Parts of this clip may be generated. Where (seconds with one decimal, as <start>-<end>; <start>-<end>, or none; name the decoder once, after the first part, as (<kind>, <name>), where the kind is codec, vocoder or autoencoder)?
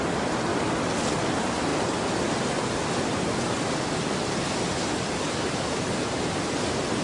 none